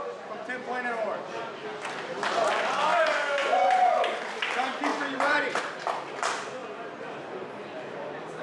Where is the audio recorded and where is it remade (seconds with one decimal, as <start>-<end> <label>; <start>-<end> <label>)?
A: 0.0-2.9 recorded; 2.9-3.9 remade; 3.9-4.9 recorded; 4.9-5.6 remade; 5.6-8.4 recorded

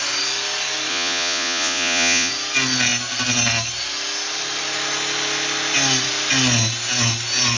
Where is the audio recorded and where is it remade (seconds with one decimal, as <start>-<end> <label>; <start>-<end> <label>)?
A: 0.0-0.9 recorded; 0.9-2.3 remade; 2.3-7.6 recorded

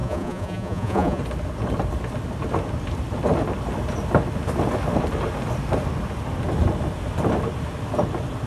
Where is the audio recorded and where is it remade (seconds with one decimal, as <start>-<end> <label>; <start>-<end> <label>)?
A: 0.0-1.2 remade; 1.2-8.5 recorded

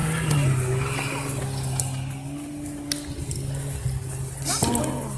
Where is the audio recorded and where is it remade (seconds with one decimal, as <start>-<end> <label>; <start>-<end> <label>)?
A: 0.0-5.2 recorded

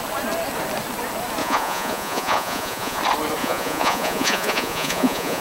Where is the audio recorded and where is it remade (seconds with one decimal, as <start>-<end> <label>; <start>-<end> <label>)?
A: 0.0-1.4 recorded; 1.4-3.0 remade; 3.0-3.4 recorded; 3.4-5.4 remade

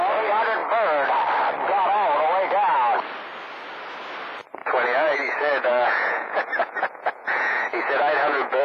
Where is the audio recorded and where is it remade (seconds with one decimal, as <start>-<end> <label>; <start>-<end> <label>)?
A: 0.0-4.6 recorded; 4.6-8.6 remade